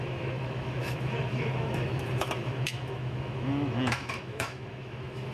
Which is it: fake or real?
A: fake